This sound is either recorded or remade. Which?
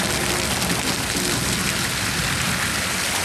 recorded